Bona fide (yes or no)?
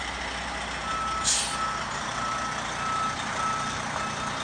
yes